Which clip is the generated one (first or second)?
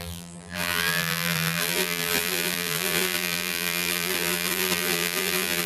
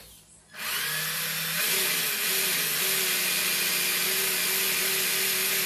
first